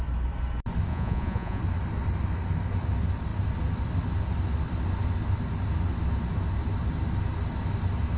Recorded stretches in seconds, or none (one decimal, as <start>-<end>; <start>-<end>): 0.0-0.9; 1.6-8.2